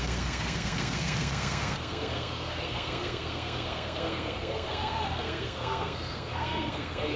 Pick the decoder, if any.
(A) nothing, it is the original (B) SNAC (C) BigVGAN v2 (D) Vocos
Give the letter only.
B